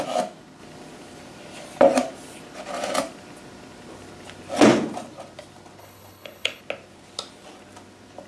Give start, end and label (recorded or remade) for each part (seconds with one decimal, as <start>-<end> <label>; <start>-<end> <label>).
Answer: 0.0-5.8 recorded; 5.8-6.6 remade; 6.6-8.3 recorded